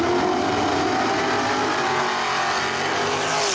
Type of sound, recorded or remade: recorded